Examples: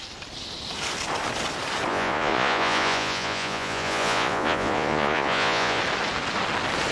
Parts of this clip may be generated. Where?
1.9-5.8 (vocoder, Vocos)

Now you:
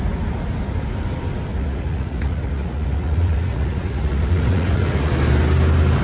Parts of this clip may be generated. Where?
1.5-5.1 (vocoder, Vocos)

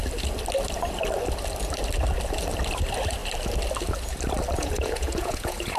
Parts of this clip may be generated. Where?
4.6-5.8 (vocoder, Vocos)

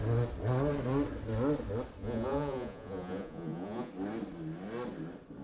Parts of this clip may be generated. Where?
2.0-3.9 (vocoder, Vocos)

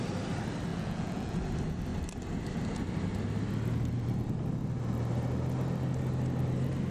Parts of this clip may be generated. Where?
0.7-1.4 (vocoder, Vocos)

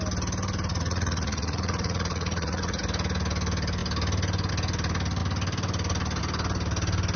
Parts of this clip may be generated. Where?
0.7-2.8 (vocoder, Vocos)